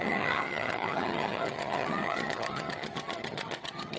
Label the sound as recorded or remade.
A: remade